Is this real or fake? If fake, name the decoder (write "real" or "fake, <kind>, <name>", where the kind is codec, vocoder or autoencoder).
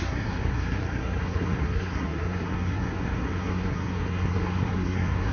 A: fake, codec, SNAC